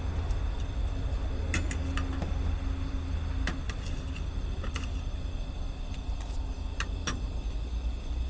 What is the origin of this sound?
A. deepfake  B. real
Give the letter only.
B